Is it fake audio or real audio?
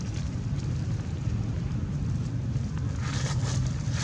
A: real